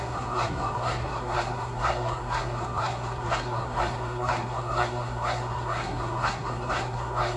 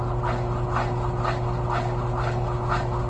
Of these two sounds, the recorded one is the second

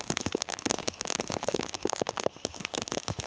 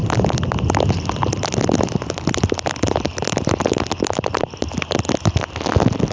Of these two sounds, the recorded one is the second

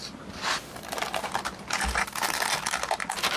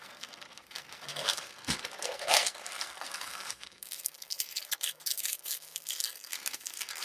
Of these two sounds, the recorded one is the first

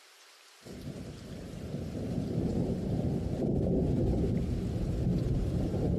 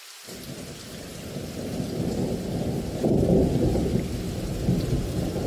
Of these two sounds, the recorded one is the second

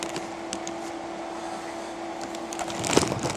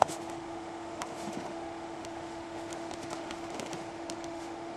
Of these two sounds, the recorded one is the first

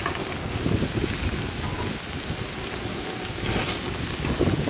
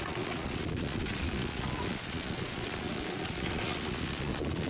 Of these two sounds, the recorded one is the first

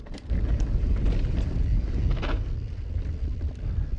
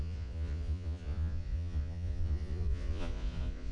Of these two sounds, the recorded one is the first